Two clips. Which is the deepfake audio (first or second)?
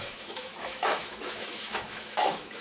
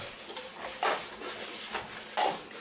first